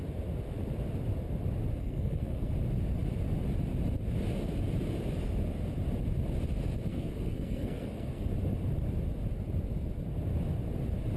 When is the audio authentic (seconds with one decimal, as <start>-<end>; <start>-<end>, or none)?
0.0-1.8; 2.5-6.9; 8.3-11.2